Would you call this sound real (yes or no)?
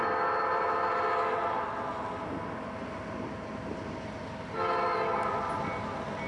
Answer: yes